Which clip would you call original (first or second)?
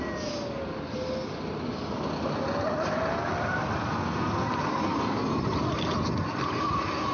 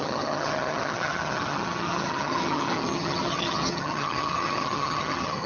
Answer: first